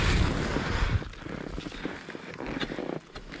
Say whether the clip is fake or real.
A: real